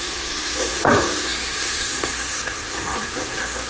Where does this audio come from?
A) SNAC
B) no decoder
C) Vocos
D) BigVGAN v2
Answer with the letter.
A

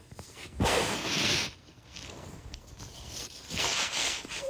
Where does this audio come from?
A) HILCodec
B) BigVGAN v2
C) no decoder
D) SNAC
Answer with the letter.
D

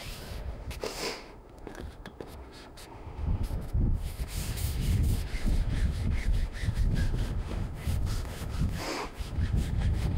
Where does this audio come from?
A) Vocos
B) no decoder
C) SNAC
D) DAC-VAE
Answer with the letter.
D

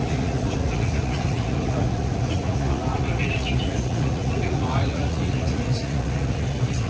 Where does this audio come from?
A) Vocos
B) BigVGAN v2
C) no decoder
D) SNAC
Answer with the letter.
A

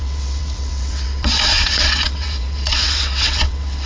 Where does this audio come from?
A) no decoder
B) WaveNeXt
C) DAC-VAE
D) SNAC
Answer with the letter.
B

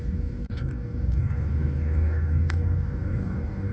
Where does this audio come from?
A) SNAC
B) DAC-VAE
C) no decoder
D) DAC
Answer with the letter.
D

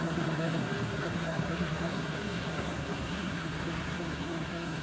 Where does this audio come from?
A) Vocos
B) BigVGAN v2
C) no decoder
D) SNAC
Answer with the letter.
D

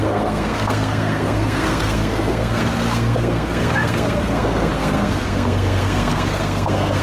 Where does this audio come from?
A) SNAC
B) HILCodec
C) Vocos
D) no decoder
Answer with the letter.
A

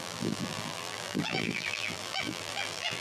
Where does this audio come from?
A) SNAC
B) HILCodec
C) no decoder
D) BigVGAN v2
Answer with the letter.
D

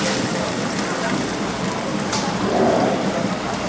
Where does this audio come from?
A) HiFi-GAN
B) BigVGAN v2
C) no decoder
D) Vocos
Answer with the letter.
C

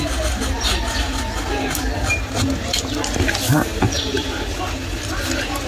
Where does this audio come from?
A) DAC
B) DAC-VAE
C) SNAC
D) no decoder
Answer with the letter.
D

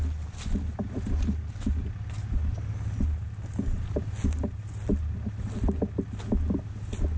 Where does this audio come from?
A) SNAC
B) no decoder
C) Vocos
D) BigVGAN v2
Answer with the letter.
B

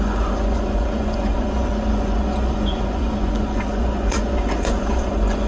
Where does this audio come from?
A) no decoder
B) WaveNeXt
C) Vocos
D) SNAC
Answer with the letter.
C